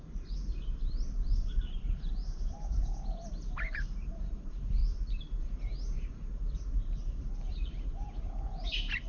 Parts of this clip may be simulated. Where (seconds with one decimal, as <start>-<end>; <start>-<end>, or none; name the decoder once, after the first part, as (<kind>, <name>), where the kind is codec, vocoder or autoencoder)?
0.0-4.8 (vocoder, BigVGAN v2); 5.4-9.1